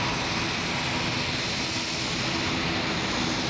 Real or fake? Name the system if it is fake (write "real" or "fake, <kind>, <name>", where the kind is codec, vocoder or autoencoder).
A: real